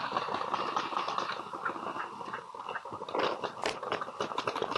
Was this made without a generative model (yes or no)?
yes